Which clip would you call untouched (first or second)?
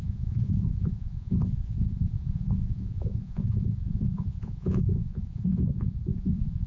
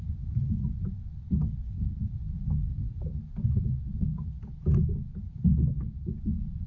second